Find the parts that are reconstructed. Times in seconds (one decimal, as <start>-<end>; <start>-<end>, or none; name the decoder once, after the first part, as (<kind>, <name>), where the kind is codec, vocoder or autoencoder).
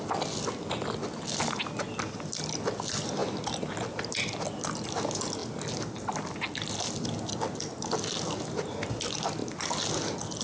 none